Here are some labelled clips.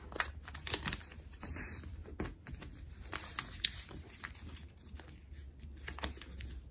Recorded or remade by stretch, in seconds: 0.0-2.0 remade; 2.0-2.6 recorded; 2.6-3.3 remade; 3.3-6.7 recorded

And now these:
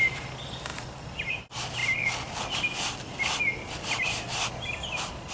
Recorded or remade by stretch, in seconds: 0.0-5.3 recorded

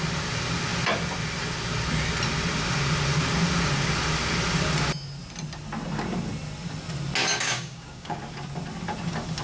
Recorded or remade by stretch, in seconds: 0.0-7.2 recorded; 7.2-8.2 remade; 8.2-9.4 recorded

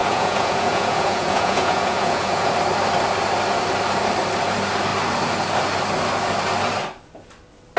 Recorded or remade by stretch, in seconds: 0.0-2.5 remade; 2.5-7.8 recorded